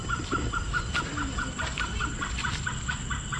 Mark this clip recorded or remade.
remade